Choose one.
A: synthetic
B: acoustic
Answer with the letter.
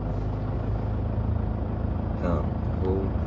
B